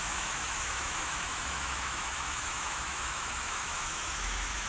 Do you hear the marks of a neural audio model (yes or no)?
yes